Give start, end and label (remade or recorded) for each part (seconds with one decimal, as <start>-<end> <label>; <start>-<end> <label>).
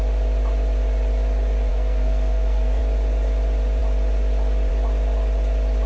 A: 0.0-1.7 recorded; 1.7-2.8 remade; 2.8-5.9 recorded